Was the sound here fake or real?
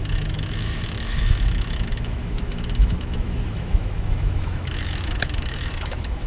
fake